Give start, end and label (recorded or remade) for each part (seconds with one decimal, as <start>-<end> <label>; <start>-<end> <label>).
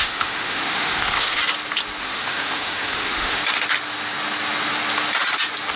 0.0-1.4 remade; 1.4-2.0 recorded; 2.0-3.4 remade; 3.4-5.8 recorded